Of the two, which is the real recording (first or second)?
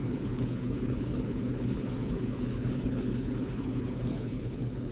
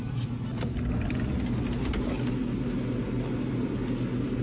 second